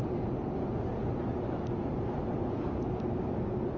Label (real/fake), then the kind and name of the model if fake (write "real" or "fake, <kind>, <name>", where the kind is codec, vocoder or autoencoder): real